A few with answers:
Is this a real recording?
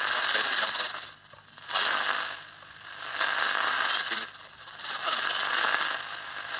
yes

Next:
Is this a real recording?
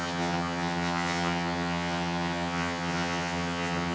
no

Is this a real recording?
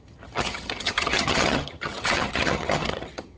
no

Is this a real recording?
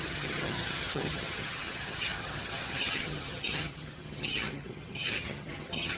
no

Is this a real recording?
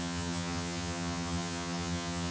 no